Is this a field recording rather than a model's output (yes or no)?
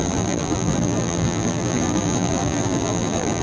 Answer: no